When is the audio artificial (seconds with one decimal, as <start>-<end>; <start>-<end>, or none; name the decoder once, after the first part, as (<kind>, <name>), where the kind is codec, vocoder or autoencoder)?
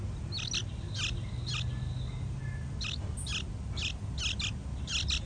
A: none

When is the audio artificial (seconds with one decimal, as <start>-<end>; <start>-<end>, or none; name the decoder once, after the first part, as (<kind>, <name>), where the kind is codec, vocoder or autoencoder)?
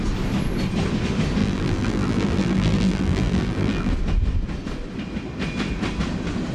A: 1.4-3.9 (vocoder, BigVGAN v2)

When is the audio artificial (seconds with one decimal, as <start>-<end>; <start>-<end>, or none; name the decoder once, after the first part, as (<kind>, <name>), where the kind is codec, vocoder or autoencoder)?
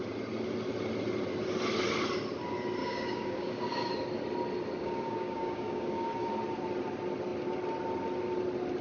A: 2.8-3.9 (codec, DAC); 4.8-6.3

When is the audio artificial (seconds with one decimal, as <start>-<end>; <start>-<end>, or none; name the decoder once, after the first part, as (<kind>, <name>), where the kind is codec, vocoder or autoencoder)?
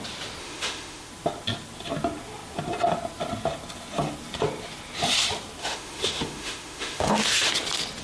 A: 0.4-1.1 (autoencoder, DAC-VAE); 5.6-7.5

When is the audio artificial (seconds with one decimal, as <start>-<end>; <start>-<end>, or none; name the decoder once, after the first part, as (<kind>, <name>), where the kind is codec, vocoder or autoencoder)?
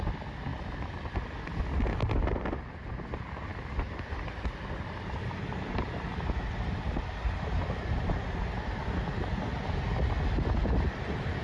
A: none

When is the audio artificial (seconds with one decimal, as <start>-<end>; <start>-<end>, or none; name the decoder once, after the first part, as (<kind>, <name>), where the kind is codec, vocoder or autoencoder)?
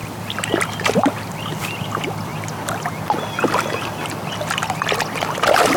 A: 0.0-1.6 (vocoder, BigVGAN v2)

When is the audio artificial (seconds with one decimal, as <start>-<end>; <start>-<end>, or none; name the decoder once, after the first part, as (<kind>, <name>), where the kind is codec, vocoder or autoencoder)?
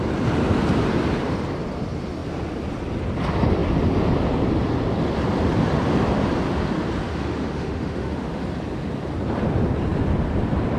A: 7.0-8.4 (autoencoder, DAC-VAE)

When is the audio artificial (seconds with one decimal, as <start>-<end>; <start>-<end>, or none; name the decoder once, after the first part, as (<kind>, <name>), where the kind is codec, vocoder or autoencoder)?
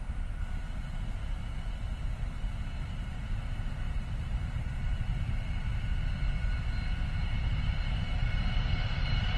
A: 0.0-1.4 (vocoder, BigVGAN v2); 3.8-5.7; 7.2-9.4